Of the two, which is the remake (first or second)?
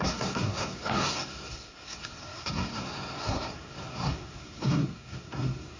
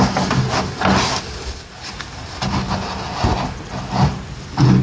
first